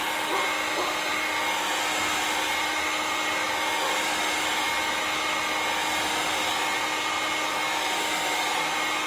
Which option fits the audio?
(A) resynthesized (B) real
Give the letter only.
B